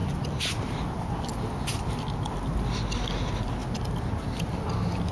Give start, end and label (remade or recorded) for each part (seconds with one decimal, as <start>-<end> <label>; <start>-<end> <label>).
0.0-5.1 recorded